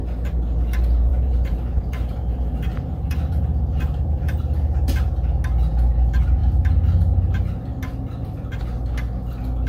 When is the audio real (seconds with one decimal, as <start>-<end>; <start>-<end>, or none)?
0.0-1.1; 4.4-9.7

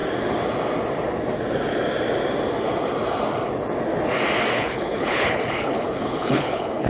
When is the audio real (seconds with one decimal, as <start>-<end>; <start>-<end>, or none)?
0.0-4.5

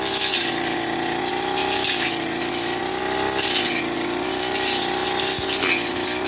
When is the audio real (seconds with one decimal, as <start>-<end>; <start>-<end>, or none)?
0.0-6.3

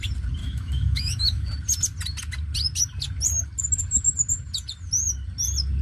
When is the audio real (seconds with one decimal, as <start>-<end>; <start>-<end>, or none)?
0.0-0.4; 1.5-5.8

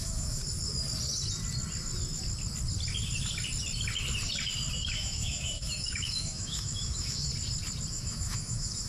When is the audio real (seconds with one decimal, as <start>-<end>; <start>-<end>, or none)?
0.4-4.7; 7.3-7.9